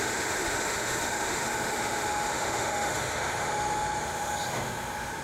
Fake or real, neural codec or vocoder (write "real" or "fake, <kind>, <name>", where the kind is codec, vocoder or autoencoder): fake, autoencoder, DAC-VAE